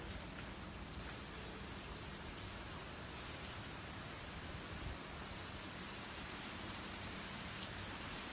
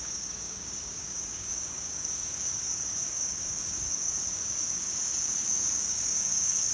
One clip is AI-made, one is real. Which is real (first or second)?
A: first